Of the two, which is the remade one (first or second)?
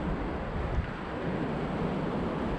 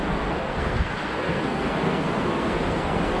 second